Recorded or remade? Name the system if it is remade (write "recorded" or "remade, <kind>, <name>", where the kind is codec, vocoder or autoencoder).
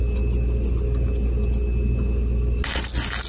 recorded